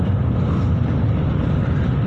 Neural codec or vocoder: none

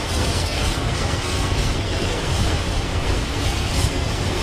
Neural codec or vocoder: codec, SNAC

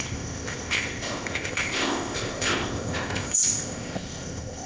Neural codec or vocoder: codec, ZipCodec